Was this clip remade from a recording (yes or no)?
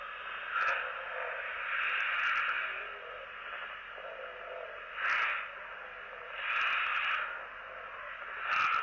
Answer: no